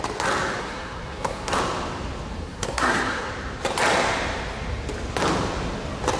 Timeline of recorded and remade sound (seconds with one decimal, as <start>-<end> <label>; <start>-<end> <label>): 0.0-0.6 recorded; 0.6-1.5 remade; 1.5-2.4 recorded; 2.4-3.3 remade; 3.3-6.2 recorded